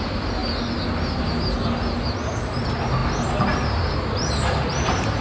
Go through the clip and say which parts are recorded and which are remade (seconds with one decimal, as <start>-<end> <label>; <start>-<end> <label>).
0.0-5.2 recorded